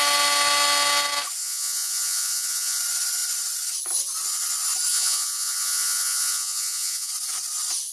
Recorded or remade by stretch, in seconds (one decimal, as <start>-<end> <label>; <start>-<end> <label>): 0.0-1.4 recorded; 1.4-2.8 remade; 2.8-4.9 recorded; 4.9-7.1 remade; 7.1-7.9 recorded